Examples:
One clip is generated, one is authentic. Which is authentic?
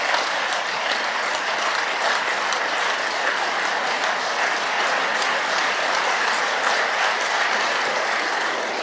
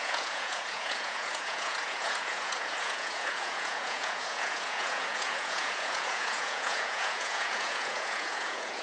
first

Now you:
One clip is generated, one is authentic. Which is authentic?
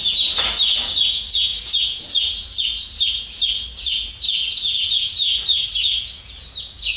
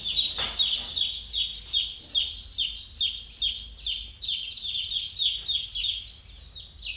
second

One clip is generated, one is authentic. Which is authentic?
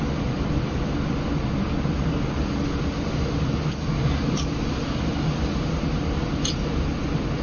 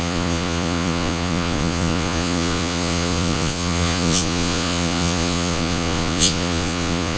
first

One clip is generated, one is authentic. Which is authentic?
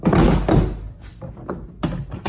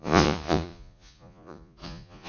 first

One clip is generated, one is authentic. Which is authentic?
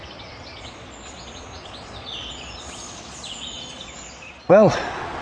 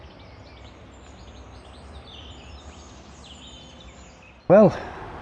second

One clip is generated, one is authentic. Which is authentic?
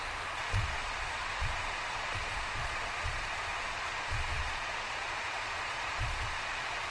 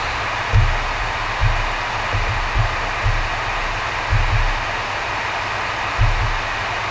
second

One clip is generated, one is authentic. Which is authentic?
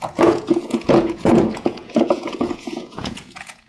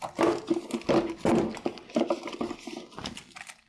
second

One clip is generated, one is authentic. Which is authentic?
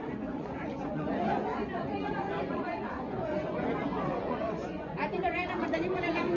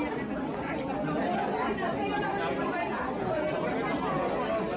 second